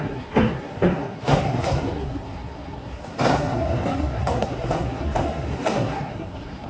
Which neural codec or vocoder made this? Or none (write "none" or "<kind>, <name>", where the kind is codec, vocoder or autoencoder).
codec, SNAC